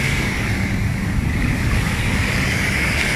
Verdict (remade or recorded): remade